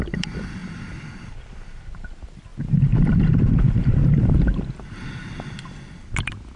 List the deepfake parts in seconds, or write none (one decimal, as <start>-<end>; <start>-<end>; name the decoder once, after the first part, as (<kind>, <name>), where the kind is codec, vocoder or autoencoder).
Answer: none